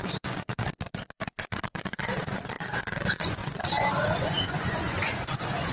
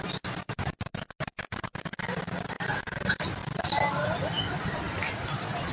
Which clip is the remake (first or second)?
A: first